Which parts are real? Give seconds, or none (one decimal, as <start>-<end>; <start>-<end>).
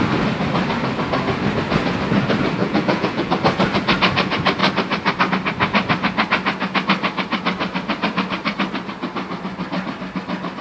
0.0-2.6; 3.3-10.6